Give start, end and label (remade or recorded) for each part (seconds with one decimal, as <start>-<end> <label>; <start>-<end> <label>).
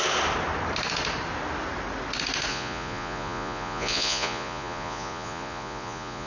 0.0-2.5 recorded; 2.5-6.3 remade